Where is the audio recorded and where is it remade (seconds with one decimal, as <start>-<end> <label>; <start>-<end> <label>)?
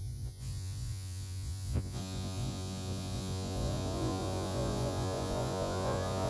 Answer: 0.0-6.3 remade